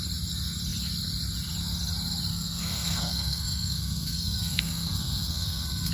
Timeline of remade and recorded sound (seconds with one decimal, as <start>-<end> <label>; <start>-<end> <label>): 0.0-2.3 recorded; 2.3-5.9 remade